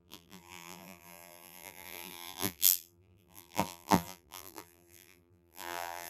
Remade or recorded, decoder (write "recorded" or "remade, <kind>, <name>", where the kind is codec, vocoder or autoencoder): remade, vocoder, BigVGAN v2